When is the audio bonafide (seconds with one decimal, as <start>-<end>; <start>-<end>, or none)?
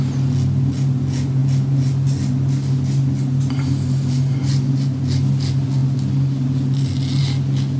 0.0-7.8